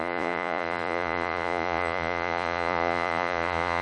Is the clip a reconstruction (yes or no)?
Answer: yes